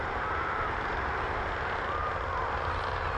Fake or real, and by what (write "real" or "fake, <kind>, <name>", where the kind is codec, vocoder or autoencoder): real